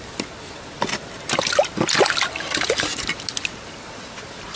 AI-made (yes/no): no